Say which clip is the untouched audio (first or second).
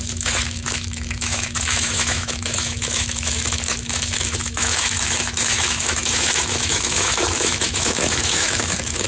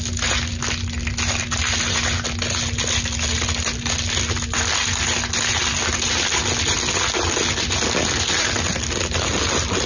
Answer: second